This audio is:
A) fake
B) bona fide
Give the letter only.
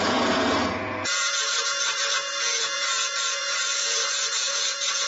A